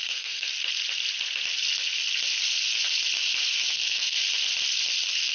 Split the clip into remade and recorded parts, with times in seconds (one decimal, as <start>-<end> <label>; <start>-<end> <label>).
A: 0.0-0.5 remade; 0.5-3.7 recorded; 3.7-4.2 remade; 4.2-5.3 recorded